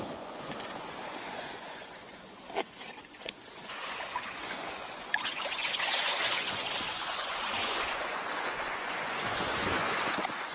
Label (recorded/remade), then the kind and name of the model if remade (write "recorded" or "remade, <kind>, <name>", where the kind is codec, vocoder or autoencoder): remade, vocoder, Vocos